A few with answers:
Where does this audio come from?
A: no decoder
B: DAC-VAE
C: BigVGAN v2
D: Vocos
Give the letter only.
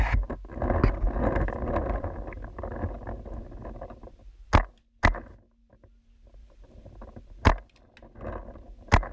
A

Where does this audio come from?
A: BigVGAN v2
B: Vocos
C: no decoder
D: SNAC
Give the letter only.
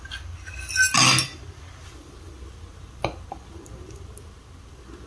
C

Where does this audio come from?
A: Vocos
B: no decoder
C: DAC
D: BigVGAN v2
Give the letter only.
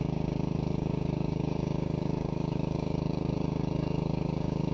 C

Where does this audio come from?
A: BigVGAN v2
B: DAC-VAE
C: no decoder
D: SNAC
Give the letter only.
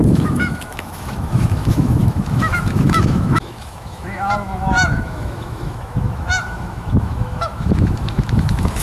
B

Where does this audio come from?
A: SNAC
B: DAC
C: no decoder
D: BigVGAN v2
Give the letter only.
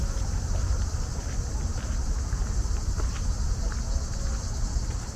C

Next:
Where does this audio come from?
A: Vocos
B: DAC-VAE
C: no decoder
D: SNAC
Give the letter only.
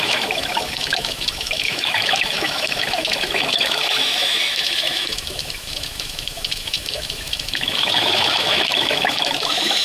B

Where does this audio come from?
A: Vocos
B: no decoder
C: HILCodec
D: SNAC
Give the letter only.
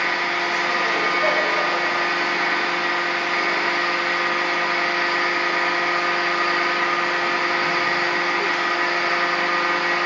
B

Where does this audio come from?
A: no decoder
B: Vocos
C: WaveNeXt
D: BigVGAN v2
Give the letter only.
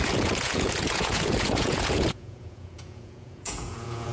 B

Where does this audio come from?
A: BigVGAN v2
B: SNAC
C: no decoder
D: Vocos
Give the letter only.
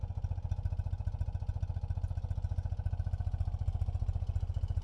C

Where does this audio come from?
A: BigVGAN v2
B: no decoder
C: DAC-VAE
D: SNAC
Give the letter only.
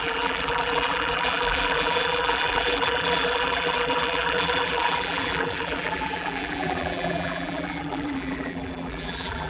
A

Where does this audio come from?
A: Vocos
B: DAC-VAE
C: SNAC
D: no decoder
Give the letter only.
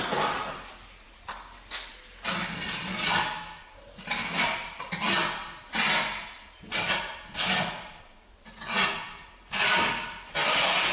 D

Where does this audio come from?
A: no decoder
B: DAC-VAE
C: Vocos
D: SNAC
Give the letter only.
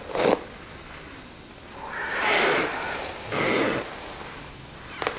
A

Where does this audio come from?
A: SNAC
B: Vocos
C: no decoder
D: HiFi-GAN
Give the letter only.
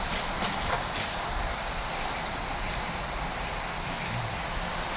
C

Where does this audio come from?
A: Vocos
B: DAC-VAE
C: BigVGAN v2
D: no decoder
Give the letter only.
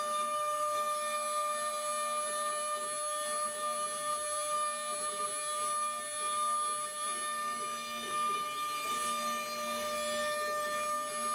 D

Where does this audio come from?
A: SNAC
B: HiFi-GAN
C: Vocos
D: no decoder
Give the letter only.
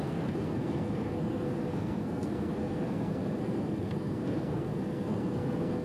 A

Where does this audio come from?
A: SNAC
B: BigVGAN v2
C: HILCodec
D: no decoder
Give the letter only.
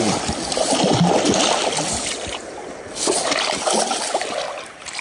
D